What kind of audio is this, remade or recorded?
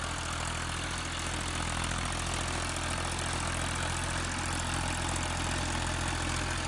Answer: recorded